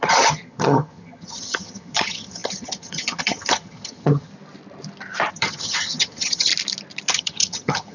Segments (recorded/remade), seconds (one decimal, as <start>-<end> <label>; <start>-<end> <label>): 0.0-4.3 remade; 4.3-5.3 recorded; 5.3-6.5 remade; 6.5-7.1 recorded; 7.1-7.9 remade